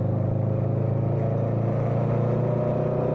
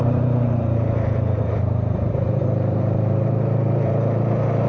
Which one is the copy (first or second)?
second